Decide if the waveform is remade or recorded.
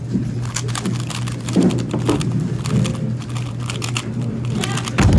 recorded